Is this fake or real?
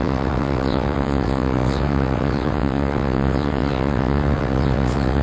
fake